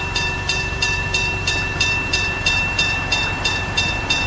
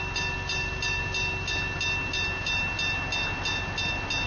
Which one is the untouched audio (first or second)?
second